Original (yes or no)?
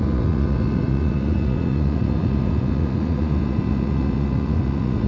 no